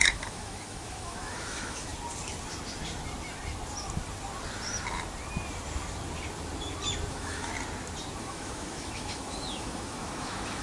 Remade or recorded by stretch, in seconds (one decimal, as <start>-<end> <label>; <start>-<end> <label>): 0.0-1.9 remade; 1.9-7.1 recorded; 7.1-7.5 remade; 7.5-8.2 recorded; 8.2-10.6 remade